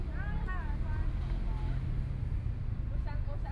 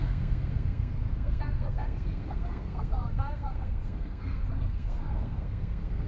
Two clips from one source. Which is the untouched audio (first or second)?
first